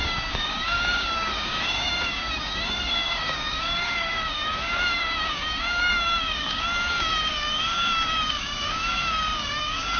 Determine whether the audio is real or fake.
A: fake